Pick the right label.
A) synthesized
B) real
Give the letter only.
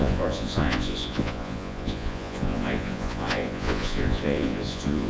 A